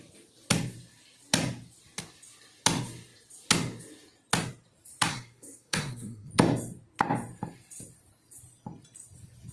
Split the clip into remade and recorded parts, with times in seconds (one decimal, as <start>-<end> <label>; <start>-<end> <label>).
0.0-5.1 recorded; 5.1-6.3 remade; 6.3-9.5 recorded